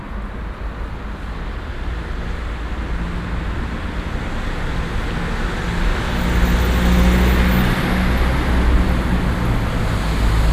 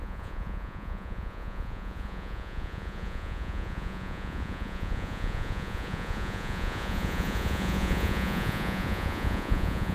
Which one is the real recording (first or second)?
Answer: first